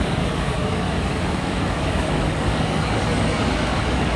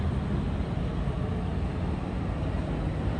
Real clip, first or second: second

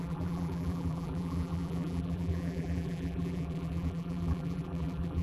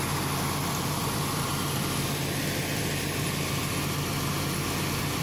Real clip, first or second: second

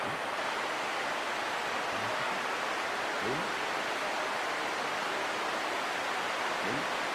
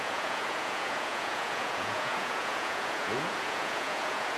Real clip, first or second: first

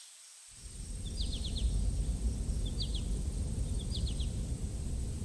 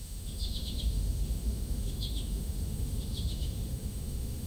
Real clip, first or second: first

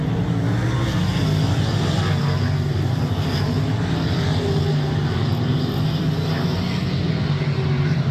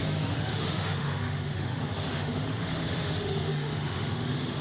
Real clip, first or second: first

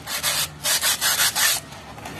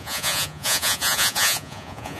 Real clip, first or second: first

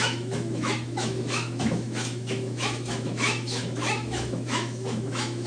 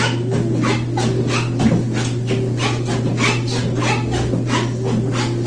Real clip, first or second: second